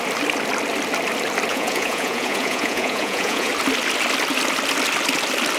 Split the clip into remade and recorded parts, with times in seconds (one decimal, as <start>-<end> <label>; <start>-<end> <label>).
0.0-1.5 recorded; 1.5-3.5 remade; 3.5-5.6 recorded